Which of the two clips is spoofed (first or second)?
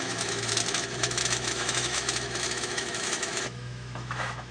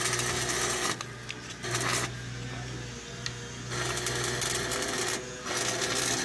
first